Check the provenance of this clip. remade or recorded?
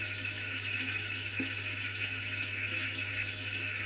remade